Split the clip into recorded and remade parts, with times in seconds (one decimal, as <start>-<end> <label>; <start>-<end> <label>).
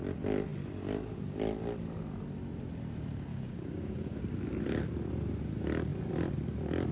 0.0-3.3 recorded; 3.3-4.2 remade; 4.2-6.9 recorded